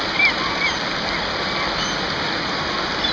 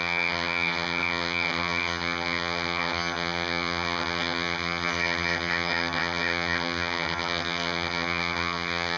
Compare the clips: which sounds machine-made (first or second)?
second